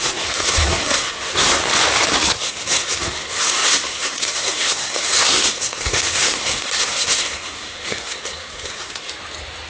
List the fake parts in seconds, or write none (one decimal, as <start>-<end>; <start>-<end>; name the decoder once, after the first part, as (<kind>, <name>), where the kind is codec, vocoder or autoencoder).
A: 0.0-1.6 (codec, SNAC); 2.1-9.1